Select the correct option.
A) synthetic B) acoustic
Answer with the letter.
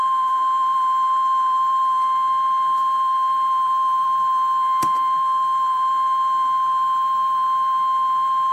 A